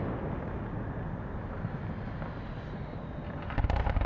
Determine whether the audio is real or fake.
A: real